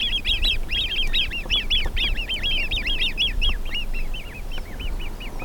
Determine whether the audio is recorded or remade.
recorded